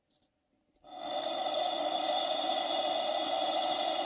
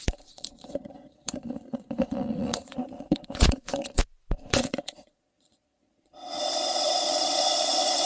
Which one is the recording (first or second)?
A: first